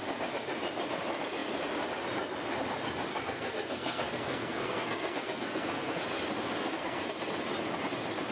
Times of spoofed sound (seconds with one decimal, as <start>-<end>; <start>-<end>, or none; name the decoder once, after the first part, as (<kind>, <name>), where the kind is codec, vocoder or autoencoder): 3.1-6.0 (codec, SNAC); 6.6-7.1